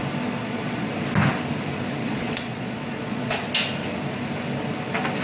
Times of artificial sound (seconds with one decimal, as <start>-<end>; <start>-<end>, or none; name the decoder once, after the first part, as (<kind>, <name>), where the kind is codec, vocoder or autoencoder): 0.4-0.9 (vocoder, Vocos); 2.0-3.3